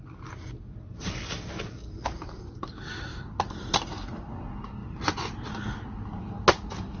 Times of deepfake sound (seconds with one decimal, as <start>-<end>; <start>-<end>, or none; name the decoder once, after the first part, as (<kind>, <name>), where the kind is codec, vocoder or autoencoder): 1.8-2.6 (vocoder, BigVGAN v2); 3.1-3.7